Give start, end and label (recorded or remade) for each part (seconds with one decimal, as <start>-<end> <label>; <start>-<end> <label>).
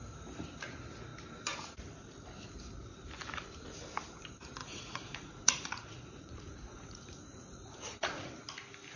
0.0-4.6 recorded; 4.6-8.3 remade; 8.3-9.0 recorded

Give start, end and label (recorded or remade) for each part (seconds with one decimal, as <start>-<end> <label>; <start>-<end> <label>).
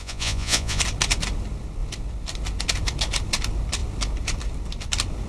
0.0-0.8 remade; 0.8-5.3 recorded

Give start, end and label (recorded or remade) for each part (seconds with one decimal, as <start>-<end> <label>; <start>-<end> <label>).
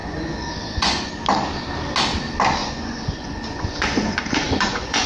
0.0-1.1 remade; 1.1-2.6 recorded; 2.6-5.1 remade